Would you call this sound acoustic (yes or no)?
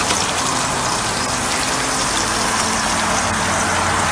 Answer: yes